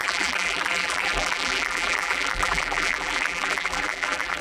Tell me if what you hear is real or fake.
fake